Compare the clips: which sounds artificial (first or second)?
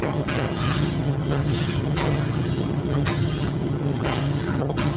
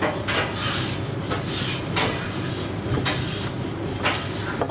first